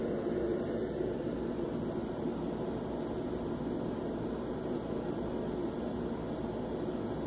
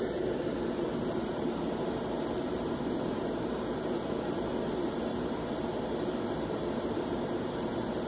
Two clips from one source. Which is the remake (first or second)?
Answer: second